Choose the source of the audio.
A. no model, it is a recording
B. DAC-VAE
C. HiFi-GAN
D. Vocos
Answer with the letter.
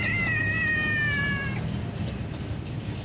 A